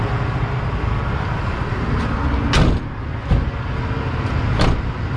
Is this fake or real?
real